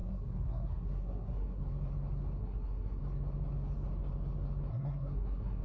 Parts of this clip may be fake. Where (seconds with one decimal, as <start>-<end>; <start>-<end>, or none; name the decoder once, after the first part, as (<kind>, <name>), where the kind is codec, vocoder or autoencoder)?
0.0-1.6 (codec, SNAC); 2.4-3.0; 4.7-5.6